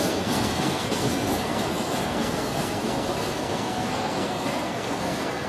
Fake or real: fake